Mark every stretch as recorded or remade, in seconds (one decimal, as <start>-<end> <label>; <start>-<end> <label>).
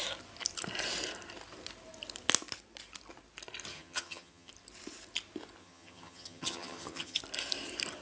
0.0-3.7 recorded; 3.7-4.5 remade; 4.5-5.6 recorded; 5.6-7.2 remade; 7.2-8.0 recorded